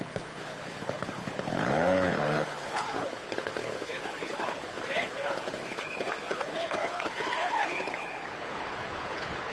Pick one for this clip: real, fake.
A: fake